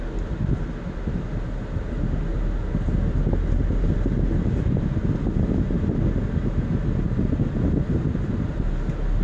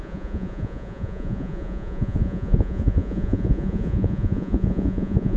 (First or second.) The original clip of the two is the first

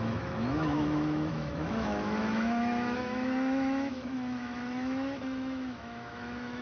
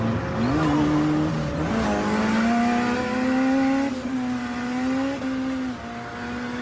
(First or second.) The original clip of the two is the second